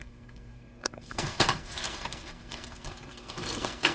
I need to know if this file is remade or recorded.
remade